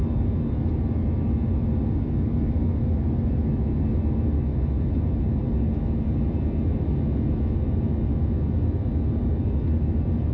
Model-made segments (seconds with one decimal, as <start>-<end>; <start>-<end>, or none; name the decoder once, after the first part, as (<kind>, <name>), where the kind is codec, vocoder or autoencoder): none